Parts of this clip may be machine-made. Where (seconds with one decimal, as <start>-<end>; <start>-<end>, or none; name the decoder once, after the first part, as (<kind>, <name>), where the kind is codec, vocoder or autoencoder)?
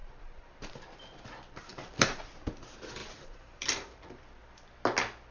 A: 0.0-0.7 (vocoder, BigVGAN v2); 1.7-2.3; 3.0-4.2